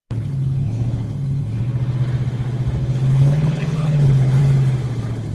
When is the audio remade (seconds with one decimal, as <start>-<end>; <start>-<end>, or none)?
0.0-1.6; 2.8-4.4